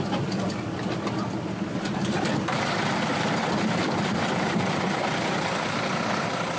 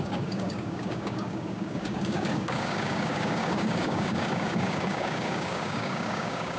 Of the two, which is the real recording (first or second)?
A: first